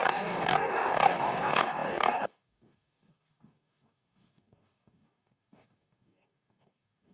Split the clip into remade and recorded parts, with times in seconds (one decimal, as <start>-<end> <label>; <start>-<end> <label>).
0.0-7.1 remade